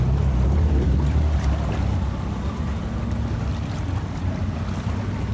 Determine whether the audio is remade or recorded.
recorded